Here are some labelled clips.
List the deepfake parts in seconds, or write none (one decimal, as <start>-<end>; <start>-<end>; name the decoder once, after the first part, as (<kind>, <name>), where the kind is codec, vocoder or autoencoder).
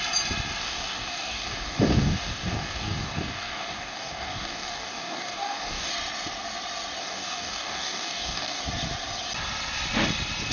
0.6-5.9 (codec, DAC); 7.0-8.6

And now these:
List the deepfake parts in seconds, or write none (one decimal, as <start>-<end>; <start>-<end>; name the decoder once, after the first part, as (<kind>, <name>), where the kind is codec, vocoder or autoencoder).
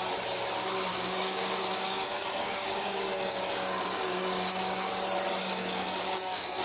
0.9-4.9 (codec, DAC); 5.4-6.6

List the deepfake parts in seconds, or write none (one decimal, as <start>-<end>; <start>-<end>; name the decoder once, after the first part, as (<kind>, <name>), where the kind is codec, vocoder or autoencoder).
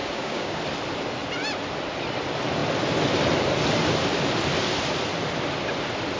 0.0-0.6 (codec, DAC)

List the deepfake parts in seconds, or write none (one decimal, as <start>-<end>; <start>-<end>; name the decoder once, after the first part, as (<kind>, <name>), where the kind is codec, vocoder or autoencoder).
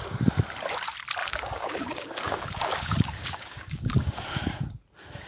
1.2-4.2 (codec, DAC)